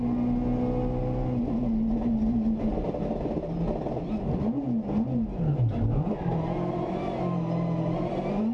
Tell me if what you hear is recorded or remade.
recorded